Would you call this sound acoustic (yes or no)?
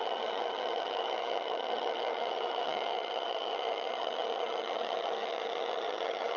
no